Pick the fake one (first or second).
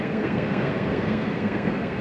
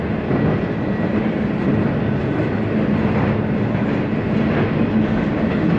first